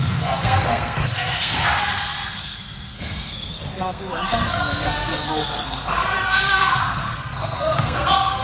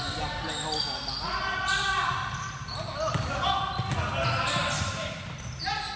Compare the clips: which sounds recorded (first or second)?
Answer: second